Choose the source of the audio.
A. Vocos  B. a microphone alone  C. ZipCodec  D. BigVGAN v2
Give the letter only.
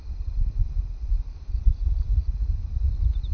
D